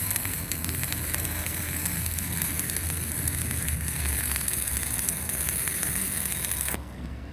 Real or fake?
fake